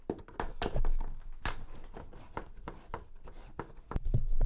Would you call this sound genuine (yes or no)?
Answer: yes